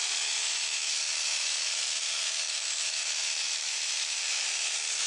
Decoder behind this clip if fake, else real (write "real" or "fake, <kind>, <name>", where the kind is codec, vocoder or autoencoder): fake, autoencoder, DAC-VAE